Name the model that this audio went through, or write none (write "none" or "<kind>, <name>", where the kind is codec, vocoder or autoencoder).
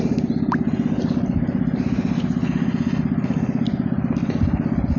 none